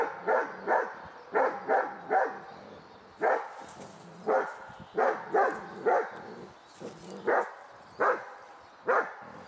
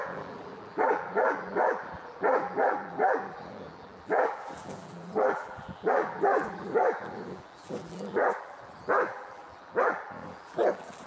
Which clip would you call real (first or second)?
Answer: first